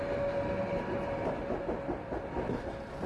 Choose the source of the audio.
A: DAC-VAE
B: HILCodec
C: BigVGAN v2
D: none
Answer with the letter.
D